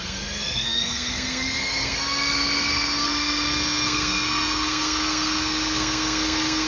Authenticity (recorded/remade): remade